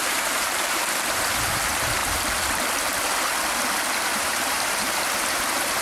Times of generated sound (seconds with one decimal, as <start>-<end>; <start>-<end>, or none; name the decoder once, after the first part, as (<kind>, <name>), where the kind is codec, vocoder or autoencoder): 0.0-2.0 (vocoder, BigVGAN v2); 4.2-5.8